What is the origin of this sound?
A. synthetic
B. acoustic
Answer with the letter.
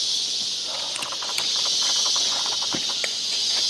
A